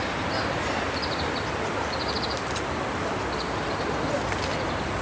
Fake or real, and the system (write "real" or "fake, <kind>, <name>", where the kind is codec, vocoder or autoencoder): real